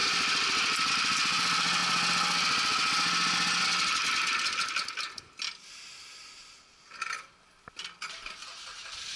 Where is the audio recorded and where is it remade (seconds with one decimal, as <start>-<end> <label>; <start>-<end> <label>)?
0.0-9.2 recorded